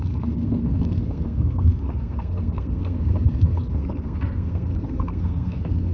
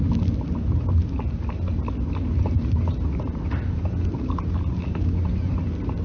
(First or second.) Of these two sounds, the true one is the second